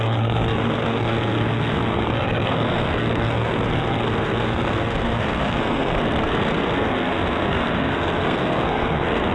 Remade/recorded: remade